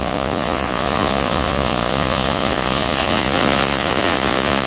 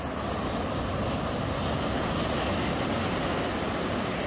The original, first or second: second